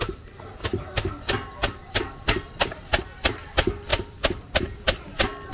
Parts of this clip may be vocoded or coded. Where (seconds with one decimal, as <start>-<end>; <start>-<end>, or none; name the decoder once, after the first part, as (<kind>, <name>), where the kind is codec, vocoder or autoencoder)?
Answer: 1.6-3.0 (vocoder, BigVGAN v2); 3.9-4.4

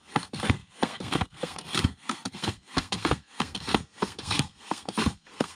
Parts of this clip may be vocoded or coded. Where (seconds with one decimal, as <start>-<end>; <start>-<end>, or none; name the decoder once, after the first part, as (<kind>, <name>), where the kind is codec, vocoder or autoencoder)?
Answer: 0.0-5.6 (codec, SNAC)

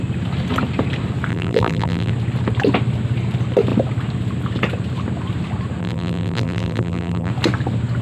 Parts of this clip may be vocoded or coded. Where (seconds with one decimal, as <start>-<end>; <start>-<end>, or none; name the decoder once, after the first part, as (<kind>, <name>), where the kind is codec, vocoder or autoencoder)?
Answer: 1.3-2.1 (vocoder, BigVGAN v2); 5.8-7.3

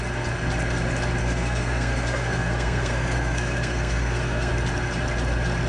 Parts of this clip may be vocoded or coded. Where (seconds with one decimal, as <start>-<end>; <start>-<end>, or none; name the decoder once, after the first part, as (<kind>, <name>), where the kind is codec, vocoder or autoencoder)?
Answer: 1.2-4.5 (codec, SNAC)

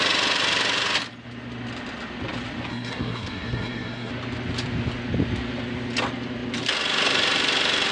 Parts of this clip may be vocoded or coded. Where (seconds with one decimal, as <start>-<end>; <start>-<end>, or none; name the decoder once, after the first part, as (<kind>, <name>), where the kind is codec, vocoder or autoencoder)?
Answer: 2.7-4.1 (codec, SNAC)